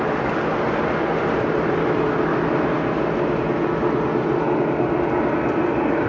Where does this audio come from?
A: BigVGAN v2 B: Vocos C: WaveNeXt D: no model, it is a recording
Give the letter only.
D